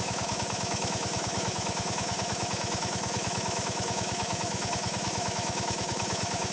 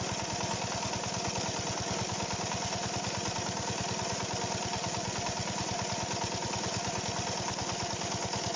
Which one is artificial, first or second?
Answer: first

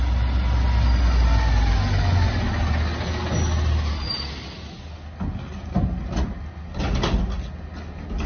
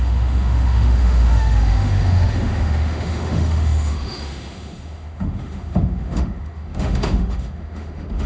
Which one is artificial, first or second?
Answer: second